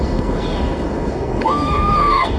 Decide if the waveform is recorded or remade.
remade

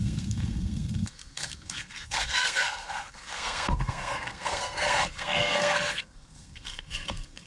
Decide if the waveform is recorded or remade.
remade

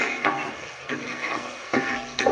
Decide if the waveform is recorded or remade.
remade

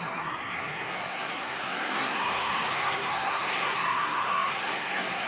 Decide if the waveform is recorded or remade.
remade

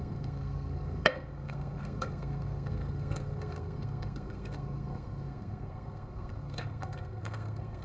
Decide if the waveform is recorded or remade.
remade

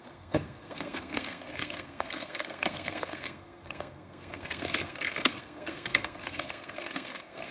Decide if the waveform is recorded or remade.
remade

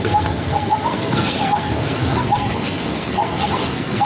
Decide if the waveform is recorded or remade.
remade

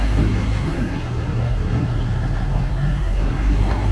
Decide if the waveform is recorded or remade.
remade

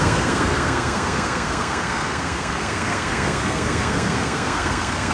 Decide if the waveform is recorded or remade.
remade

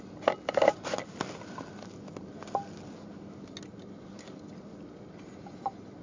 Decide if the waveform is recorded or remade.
recorded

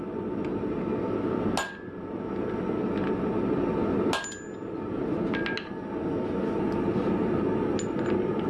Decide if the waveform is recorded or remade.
recorded